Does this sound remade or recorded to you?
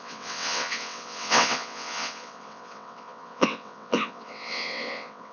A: remade